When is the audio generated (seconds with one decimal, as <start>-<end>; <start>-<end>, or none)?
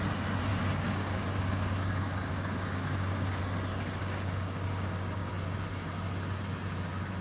0.5-3.4; 4.0-5.3